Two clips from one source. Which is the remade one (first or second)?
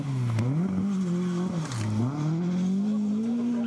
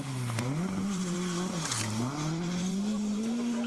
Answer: second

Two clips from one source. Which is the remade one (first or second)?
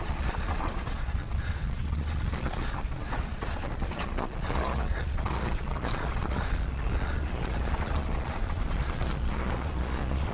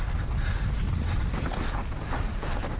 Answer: first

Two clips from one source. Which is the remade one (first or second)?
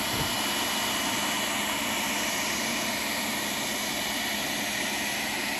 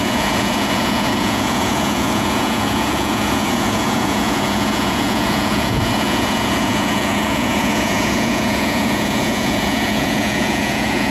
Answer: second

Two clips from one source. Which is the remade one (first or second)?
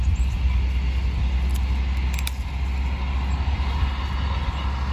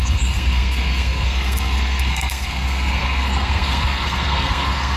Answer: second